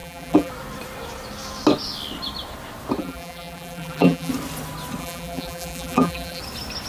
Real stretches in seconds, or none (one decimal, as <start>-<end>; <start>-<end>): 0.5-3.0; 4.3-5.0; 6.4-6.9